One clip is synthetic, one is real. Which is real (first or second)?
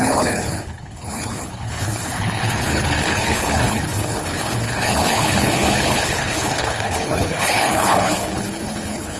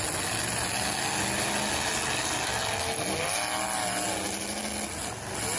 second